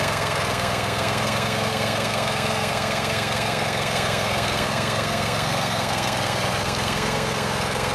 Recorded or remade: remade